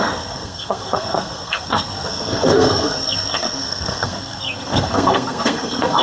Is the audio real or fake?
fake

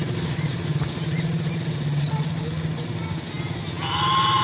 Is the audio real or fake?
real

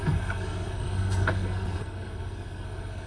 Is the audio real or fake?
fake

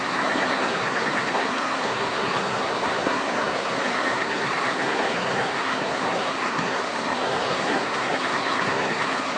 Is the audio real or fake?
fake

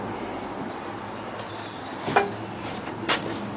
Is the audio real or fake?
real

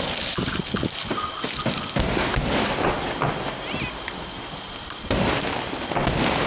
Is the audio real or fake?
real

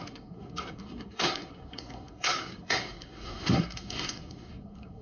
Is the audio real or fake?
fake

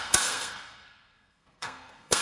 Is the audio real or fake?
fake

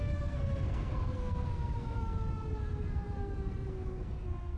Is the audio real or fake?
fake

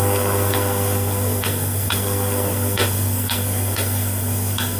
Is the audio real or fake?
fake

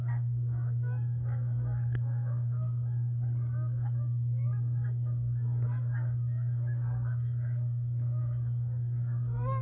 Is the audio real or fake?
fake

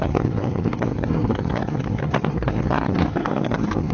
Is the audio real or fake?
fake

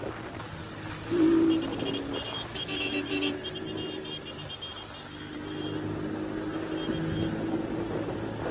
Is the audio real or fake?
real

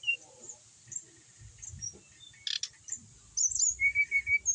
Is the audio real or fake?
real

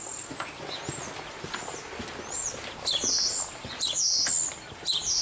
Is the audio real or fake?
real